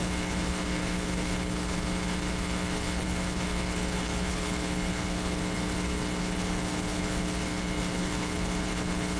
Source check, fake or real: fake